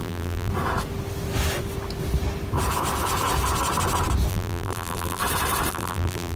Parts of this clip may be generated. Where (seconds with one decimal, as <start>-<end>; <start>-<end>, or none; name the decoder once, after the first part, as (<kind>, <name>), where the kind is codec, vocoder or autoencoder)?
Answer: 0.0-0.5 (vocoder, BigVGAN v2); 4.3-5.2; 5.7-6.4